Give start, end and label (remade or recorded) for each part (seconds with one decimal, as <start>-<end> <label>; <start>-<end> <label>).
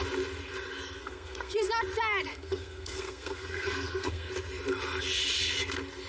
0.0-1.0 recorded; 1.0-1.7 remade; 1.7-2.3 recorded; 2.3-4.3 remade; 4.3-6.1 recorded